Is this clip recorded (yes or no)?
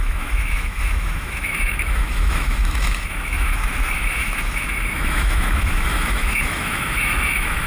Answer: no